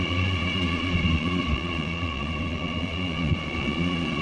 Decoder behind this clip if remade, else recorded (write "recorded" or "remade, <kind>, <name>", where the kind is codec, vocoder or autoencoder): remade, vocoder, Vocos